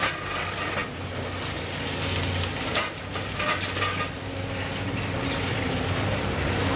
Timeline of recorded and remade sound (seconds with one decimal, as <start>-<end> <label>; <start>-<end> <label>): 0.0-6.8 recorded